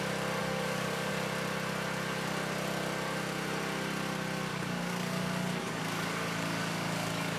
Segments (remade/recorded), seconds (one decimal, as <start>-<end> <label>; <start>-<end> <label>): 0.0-0.4 recorded; 0.4-1.1 remade; 1.1-4.5 recorded; 4.5-7.4 remade